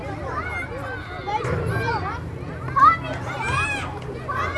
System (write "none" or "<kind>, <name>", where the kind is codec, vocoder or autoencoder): none